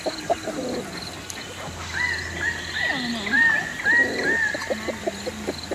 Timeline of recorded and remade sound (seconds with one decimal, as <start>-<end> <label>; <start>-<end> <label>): 0.0-5.7 recorded